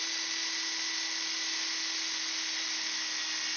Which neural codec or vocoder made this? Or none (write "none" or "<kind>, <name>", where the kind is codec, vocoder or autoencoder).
none